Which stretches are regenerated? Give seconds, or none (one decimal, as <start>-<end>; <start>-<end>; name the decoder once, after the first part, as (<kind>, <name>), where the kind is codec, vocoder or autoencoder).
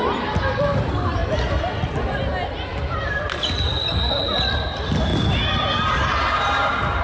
1.2-1.9 (vocoder, BigVGAN v2); 2.7-4.2